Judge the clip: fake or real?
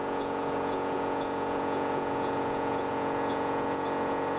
fake